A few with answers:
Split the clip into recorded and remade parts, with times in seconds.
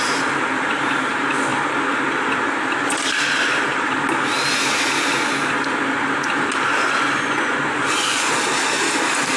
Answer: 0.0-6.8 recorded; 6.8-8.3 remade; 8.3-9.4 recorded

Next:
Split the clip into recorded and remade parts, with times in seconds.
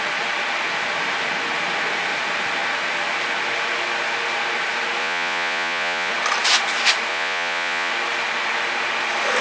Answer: 0.0-5.0 recorded; 5.0-6.1 remade; 6.1-7.1 recorded; 7.1-7.9 remade; 7.9-9.4 recorded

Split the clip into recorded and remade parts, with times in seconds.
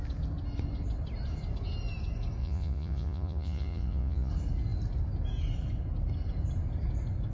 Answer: 0.0-2.4 recorded; 2.4-4.3 remade; 4.3-7.3 recorded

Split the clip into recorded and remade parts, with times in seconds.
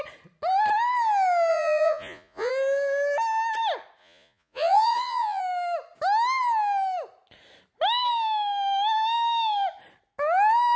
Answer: 0.0-1.5 recorded; 1.5-2.5 remade; 2.5-4.0 recorded; 4.0-5.4 remade; 5.4-10.8 recorded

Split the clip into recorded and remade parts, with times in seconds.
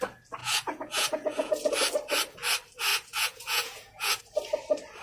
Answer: 0.0-0.4 recorded; 0.4-1.7 remade; 1.7-2.9 recorded; 2.9-4.2 remade; 4.2-5.0 recorded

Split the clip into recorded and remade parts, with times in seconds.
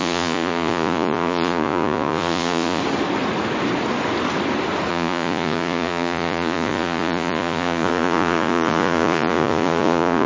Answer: 0.0-2.8 remade; 2.8-4.9 recorded; 4.9-10.3 remade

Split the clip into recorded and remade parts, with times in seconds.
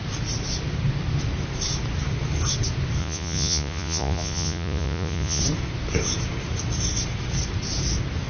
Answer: 0.0-3.0 recorded; 3.0-5.4 remade; 5.4-8.3 recorded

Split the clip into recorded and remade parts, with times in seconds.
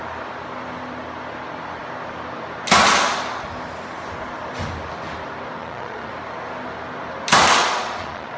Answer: 0.0-5.6 recorded; 5.6-6.1 remade; 6.1-7.6 recorded; 7.6-8.4 remade